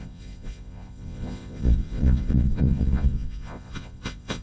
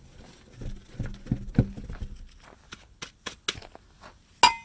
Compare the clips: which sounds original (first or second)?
second